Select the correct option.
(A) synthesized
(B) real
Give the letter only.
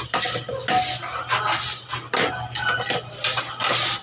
B